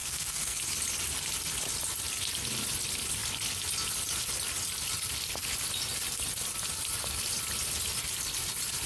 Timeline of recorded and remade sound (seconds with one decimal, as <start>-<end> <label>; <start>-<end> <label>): 0.0-0.6 remade; 0.6-8.9 recorded